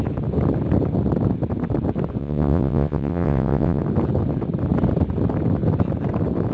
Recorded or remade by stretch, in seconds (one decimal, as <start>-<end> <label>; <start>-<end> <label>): 0.0-2.2 recorded; 2.2-3.8 remade; 3.8-6.5 recorded